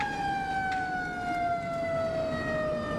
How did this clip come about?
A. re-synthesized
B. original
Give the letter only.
B